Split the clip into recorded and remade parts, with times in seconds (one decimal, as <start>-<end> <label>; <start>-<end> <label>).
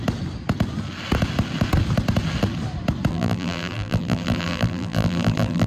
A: 0.0-3.1 recorded; 3.1-5.7 remade